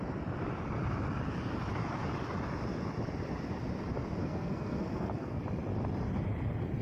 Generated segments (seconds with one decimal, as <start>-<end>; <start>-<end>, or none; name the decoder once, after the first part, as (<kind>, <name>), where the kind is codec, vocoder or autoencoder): 4.2-5.4 (codec, SNAC)